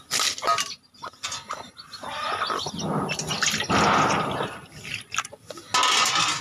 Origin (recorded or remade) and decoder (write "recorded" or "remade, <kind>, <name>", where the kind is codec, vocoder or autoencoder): recorded